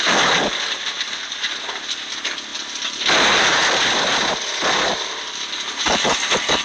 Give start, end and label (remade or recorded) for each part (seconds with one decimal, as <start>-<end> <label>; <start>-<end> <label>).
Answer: 0.0-6.6 recorded